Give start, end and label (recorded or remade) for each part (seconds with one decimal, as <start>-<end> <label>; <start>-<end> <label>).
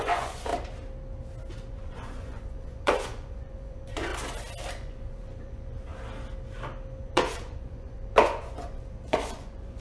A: 0.0-0.5 remade; 0.5-1.7 recorded; 1.7-4.1 remade; 4.1-4.7 recorded; 4.7-5.9 remade; 5.9-7.0 recorded; 7.0-9.8 remade